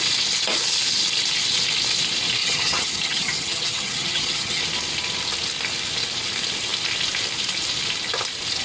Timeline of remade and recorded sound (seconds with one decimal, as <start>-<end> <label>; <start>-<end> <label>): 0.0-2.4 recorded; 2.4-4.6 remade; 4.6-8.6 recorded